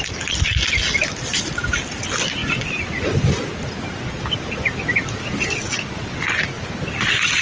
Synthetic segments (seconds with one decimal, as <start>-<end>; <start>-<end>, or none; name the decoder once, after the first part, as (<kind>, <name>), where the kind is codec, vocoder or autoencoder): none